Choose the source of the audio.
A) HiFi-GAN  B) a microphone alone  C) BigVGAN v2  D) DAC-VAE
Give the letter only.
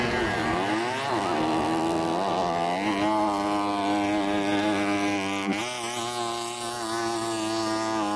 B